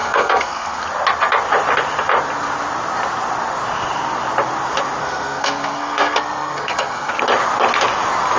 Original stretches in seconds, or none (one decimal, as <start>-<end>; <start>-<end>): 0.8-5.0; 7.1-8.4

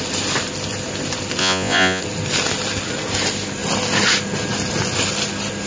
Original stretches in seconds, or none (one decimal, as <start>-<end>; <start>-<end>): 0.0-1.4; 2.0-5.7

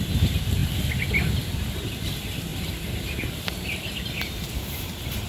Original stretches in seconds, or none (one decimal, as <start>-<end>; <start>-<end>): 0.0-2.5

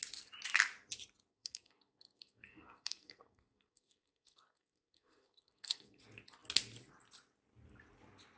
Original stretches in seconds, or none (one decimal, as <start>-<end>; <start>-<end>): 0.0-1.3; 6.0-8.4

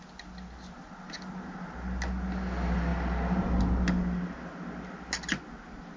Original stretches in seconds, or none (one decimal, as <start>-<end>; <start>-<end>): 0.0-6.0